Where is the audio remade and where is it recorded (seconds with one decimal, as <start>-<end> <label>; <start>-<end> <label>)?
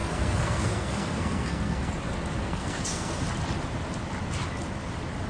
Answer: 0.0-1.9 remade; 1.9-2.4 recorded; 2.4-3.2 remade; 3.2-5.3 recorded